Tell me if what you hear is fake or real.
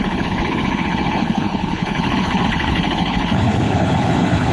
fake